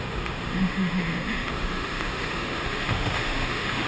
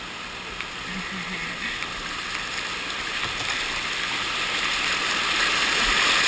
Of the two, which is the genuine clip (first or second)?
second